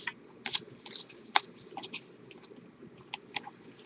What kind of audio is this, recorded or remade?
recorded